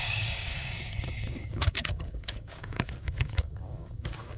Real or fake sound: fake